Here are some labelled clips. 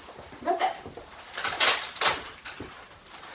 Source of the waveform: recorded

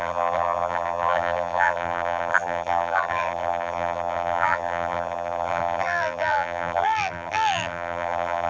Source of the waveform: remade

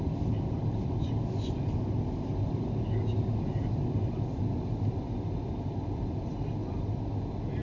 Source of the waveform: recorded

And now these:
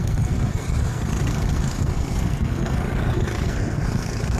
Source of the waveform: remade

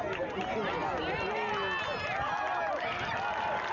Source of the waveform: recorded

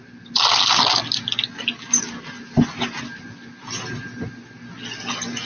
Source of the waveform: recorded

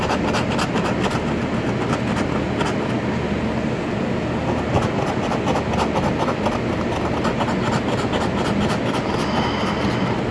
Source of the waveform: recorded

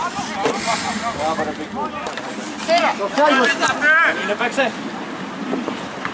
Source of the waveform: recorded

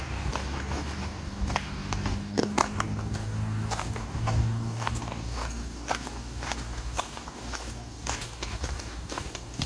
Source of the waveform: remade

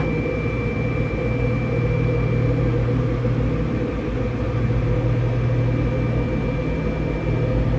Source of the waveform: recorded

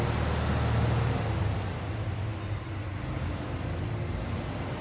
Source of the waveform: recorded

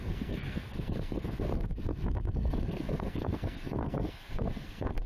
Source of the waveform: remade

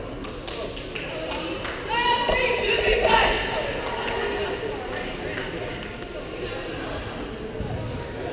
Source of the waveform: recorded